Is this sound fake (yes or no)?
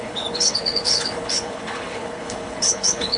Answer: yes